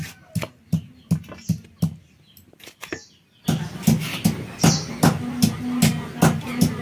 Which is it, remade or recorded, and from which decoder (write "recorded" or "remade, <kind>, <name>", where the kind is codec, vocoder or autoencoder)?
recorded